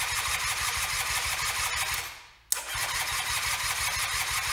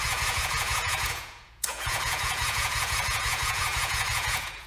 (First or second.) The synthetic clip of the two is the second